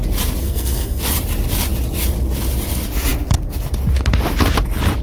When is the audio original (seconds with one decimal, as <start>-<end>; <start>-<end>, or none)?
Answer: 0.0-0.4; 1.0-5.0